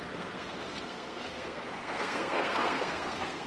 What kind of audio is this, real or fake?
fake